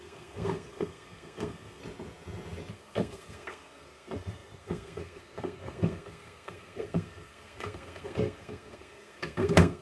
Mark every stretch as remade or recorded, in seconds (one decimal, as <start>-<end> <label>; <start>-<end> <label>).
0.0-1.8 remade; 1.8-2.7 recorded; 2.7-9.8 remade